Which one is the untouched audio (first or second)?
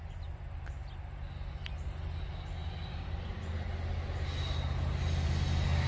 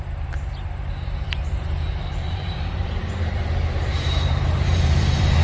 first